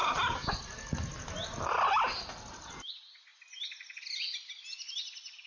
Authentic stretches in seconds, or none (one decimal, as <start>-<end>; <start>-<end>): 0.0-5.5